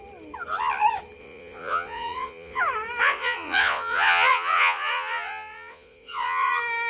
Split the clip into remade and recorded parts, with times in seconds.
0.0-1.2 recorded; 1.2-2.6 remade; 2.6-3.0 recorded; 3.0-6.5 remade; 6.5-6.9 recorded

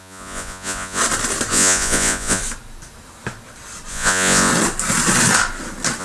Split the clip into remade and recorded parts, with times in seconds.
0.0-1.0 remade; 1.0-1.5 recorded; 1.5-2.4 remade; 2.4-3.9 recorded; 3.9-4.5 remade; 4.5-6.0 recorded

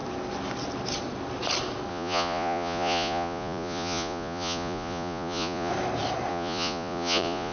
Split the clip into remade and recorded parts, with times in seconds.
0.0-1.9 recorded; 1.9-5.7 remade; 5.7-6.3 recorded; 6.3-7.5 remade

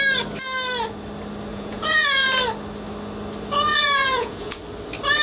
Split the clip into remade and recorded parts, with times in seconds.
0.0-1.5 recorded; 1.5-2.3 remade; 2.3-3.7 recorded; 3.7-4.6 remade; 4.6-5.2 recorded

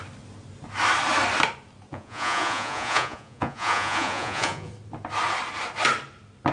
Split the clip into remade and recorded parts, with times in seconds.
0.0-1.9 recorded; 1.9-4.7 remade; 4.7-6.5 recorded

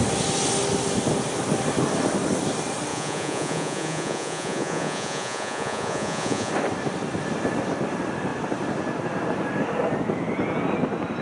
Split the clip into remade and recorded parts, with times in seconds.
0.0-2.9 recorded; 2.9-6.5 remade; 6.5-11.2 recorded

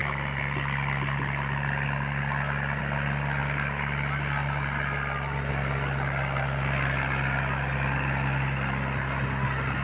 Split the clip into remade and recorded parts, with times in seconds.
0.0-9.8 recorded

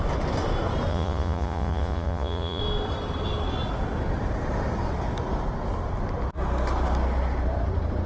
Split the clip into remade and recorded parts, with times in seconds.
0.0-0.9 recorded; 0.9-2.6 remade; 2.6-8.1 recorded